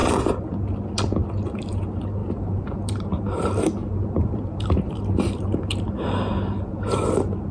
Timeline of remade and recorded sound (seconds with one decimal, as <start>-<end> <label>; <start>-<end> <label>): 0.0-2.2 recorded; 2.2-3.2 remade; 3.2-3.8 recorded; 3.8-7.0 remade; 7.0-7.5 recorded